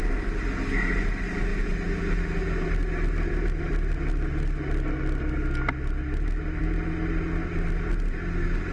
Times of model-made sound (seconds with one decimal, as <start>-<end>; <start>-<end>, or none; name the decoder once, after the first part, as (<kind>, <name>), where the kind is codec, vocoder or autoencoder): none